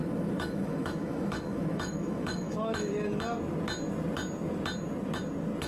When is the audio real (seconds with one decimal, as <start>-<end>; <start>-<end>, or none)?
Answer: 3.2-5.7